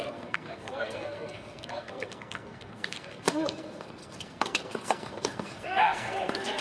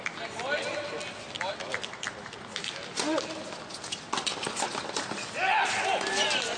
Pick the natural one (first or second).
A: second